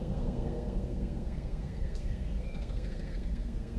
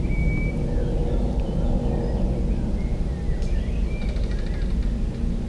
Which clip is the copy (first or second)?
first